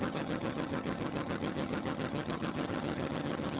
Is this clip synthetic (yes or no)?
yes